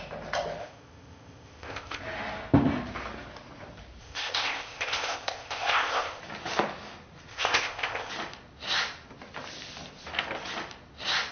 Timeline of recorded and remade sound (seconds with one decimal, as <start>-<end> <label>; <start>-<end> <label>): 0.0-0.6 recorded; 0.6-2.0 remade; 2.0-4.0 recorded; 4.0-6.2 remade; 6.2-7.3 recorded; 7.3-8.1 remade; 8.1-11.3 recorded